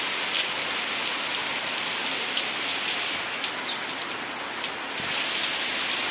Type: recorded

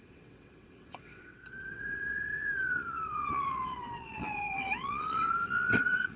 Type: remade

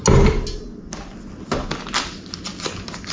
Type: recorded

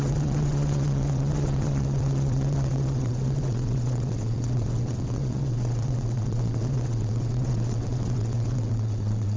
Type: remade